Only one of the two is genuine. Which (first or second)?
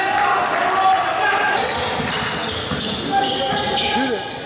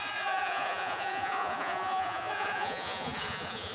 first